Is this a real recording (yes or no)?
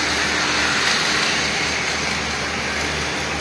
yes